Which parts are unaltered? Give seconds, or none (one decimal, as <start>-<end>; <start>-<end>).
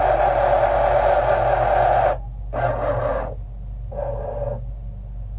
0.0-5.4